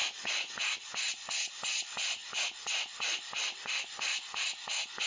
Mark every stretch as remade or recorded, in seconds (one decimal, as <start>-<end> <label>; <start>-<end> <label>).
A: 0.0-5.1 recorded